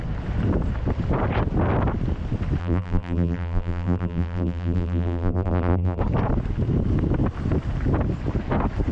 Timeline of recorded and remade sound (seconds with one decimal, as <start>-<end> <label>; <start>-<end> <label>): 0.0-2.6 recorded; 2.6-6.0 remade; 6.0-8.9 recorded